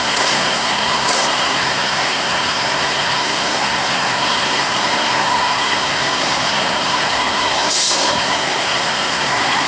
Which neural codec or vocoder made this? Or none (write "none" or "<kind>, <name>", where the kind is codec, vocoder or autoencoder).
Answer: codec, SNAC